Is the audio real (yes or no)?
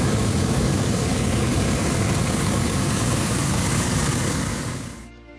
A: no